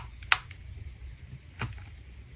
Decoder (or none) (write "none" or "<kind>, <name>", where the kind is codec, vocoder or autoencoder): none